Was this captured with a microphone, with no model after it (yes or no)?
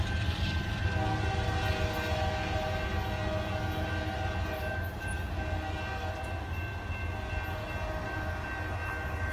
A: yes